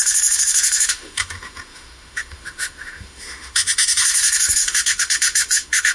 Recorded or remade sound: remade